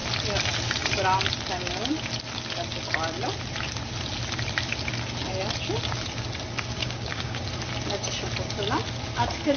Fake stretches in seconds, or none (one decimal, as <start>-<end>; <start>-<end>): 6.7-7.4